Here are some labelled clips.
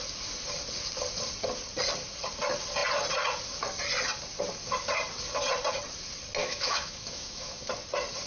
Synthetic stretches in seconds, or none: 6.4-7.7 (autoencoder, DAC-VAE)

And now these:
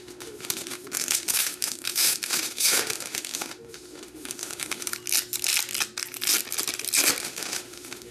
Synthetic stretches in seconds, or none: 0.0-4.9 (autoencoder, DAC-VAE); 7.2-8.1

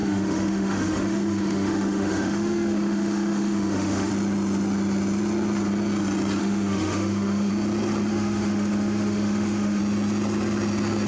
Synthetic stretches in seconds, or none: 0.0-4.1 (autoencoder, DAC-VAE); 6.4-7.5; 8.1-9.8

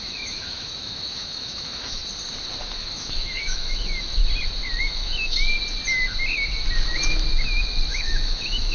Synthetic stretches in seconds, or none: 0.0-2.0 (autoencoder, DAC-VAE); 2.6-4.2; 4.8-5.5; 7.9-8.7

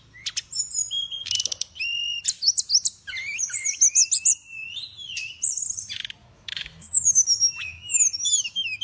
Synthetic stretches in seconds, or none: 6.2-8.8 (autoencoder, DAC-VAE)

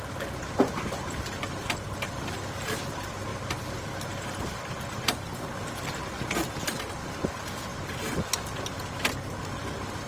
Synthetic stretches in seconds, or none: none

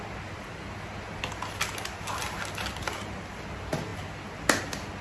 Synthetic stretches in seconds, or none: none

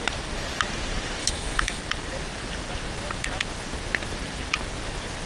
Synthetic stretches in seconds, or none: 1.2-1.8 (autoencoder, DAC-VAE)